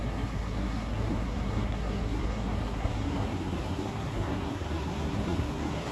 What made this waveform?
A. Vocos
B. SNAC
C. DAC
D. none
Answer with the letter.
B